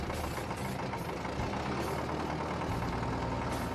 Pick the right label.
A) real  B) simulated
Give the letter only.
A